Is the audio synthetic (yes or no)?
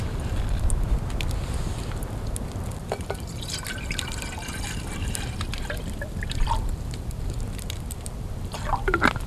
no